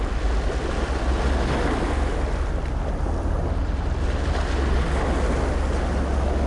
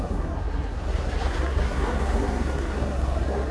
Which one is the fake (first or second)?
second